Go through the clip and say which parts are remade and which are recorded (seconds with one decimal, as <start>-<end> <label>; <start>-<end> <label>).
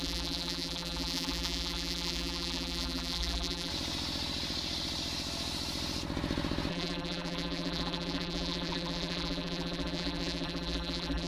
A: 0.0-3.7 remade; 3.7-6.7 recorded; 6.7-11.3 remade